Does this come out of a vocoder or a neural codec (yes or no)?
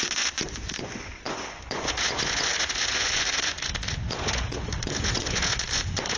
yes